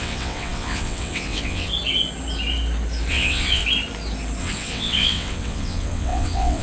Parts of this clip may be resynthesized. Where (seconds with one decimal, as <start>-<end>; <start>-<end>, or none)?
0.0-1.7; 3.1-3.6; 4.4-6.6